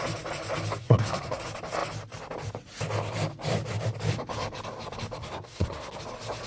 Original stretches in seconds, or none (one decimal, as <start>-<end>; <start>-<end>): 0.0-0.8; 1.4-5.2; 6.0-6.5